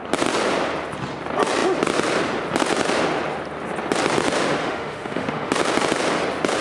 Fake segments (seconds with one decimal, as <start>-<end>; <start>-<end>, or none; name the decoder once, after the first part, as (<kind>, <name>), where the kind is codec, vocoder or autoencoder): 4.6-5.5 (autoencoder, DAC-VAE)